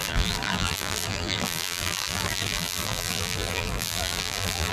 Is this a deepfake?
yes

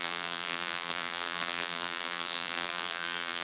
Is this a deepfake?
yes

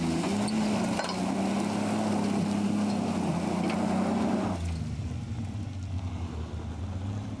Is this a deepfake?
no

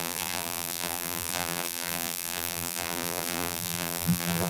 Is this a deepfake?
yes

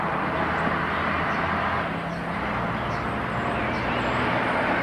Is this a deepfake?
no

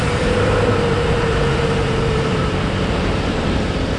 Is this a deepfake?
yes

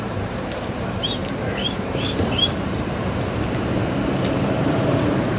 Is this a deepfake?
yes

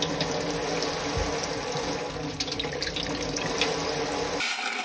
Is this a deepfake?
no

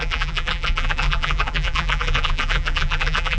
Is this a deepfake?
yes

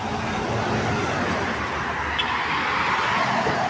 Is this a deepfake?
no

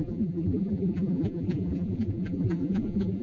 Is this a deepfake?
yes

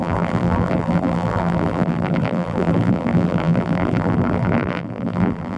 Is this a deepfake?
yes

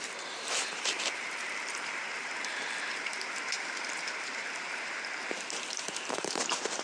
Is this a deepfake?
yes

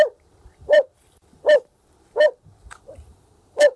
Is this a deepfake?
yes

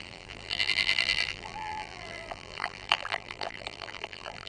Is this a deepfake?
yes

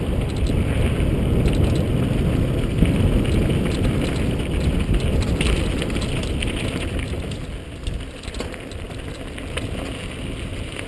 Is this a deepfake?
no